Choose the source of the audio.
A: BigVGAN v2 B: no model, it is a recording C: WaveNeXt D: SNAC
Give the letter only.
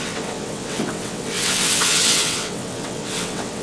C